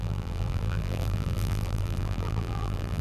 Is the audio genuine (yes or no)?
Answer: no